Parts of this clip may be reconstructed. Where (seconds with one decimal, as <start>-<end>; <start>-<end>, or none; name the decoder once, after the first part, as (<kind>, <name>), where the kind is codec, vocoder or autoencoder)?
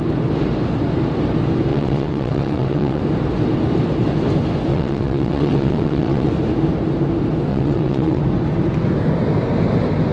1.7-3.0 (vocoder, WaveNeXt); 4.7-6.3; 7.5-8.2